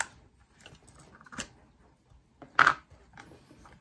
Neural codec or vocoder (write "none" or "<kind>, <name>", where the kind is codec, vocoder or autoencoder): none